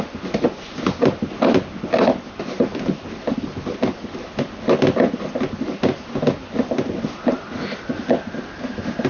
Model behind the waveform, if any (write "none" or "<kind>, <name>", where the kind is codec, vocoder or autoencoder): none